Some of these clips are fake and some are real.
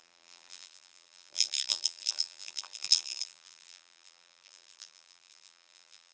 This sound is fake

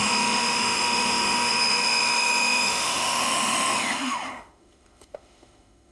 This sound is fake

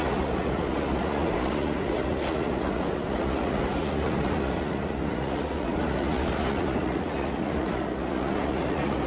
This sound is fake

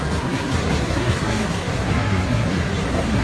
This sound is fake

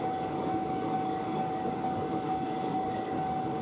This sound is fake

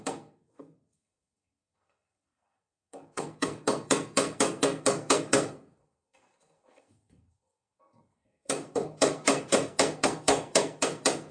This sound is fake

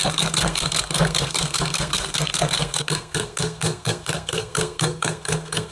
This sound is fake